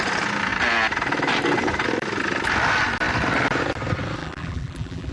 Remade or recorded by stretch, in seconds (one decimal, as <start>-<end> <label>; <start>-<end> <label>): 0.0-4.2 recorded; 4.2-5.1 remade